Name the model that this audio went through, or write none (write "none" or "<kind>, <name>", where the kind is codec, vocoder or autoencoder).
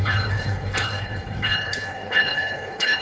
codec, HILCodec